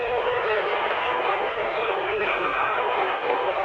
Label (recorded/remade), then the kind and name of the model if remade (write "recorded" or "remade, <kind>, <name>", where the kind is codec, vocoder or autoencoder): remade, codec, SNAC